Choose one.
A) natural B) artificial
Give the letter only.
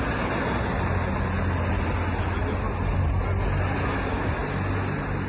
A